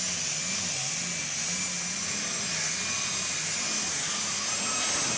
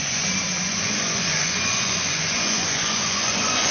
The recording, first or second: first